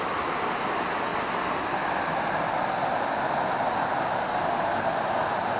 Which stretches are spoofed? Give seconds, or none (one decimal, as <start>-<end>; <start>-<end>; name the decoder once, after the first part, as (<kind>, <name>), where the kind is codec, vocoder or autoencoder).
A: none